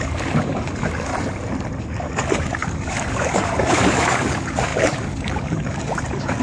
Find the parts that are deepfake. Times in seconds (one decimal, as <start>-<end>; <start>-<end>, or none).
0.0-1.1; 1.8-6.4